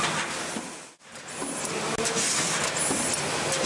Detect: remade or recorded recorded